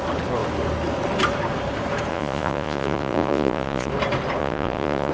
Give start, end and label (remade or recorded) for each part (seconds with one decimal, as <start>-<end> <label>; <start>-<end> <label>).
0.0-2.1 recorded; 2.1-3.9 remade; 3.9-4.4 recorded; 4.4-5.1 remade